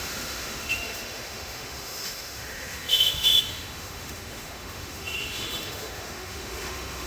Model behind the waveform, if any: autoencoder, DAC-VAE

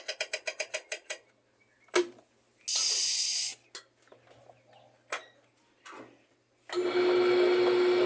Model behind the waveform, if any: none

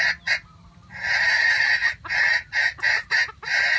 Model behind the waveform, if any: none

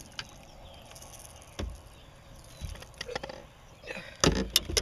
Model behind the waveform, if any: none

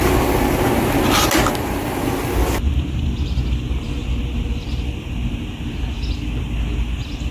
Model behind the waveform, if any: none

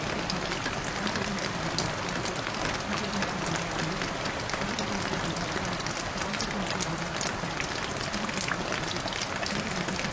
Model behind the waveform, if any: none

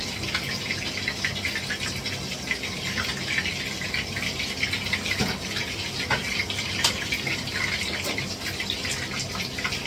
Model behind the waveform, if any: none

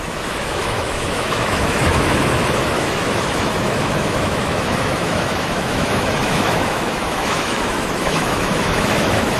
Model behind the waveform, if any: autoencoder, DAC-VAE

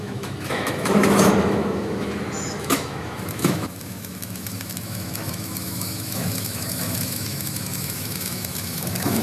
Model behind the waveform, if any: autoencoder, DAC-VAE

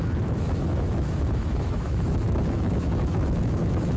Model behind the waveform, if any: autoencoder, DAC-VAE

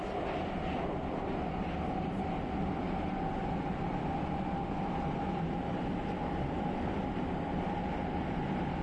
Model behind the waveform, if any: none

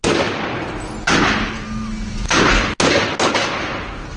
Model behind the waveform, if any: none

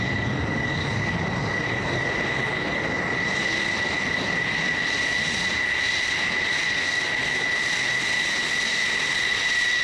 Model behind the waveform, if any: none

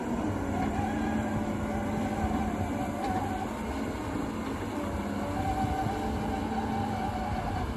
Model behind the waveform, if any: none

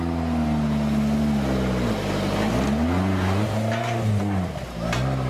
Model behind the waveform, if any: none